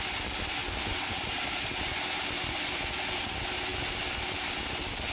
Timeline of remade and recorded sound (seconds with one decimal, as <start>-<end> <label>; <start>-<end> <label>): 0.0-0.6 recorded; 0.6-2.9 remade; 2.9-5.1 recorded